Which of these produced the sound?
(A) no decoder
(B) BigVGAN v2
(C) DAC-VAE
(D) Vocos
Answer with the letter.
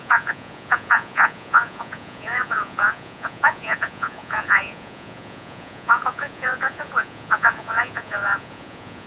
D